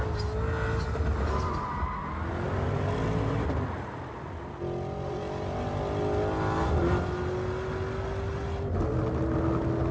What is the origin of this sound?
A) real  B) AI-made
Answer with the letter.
A